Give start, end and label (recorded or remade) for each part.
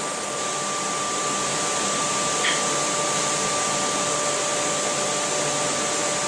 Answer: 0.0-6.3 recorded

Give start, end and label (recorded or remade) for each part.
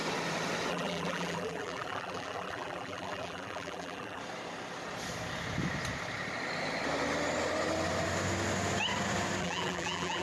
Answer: 0.0-0.7 recorded; 0.7-4.2 remade; 4.2-9.4 recorded; 9.4-10.2 remade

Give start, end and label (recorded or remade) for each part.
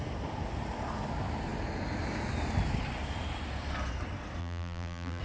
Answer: 0.0-4.4 recorded; 4.4-5.2 remade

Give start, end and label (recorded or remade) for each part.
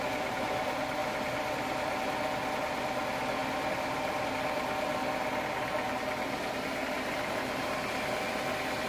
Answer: 0.0-8.9 recorded